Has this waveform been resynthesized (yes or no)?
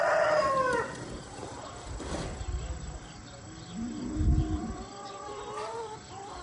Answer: yes